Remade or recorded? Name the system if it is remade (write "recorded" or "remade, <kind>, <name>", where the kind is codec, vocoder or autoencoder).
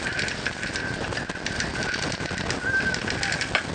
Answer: recorded